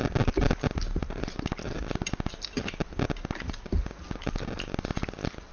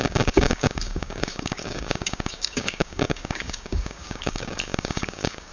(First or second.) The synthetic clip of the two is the second